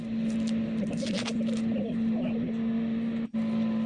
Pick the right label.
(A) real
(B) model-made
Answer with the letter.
A